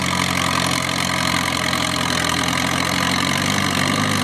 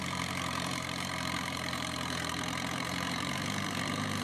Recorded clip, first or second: first